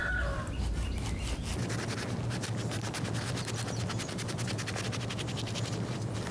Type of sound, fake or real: real